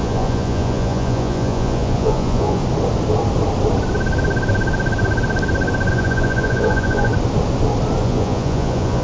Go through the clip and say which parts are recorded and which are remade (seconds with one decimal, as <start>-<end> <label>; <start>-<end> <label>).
0.0-2.6 remade; 2.6-5.9 recorded; 5.9-7.1 remade; 7.1-8.0 recorded; 8.0-9.0 remade